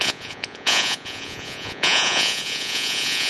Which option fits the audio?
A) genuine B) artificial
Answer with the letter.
B